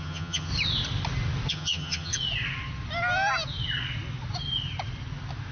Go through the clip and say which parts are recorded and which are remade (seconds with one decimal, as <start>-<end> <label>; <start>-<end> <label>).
0.0-0.5 remade; 0.5-1.5 recorded; 1.5-2.1 remade; 2.1-5.5 recorded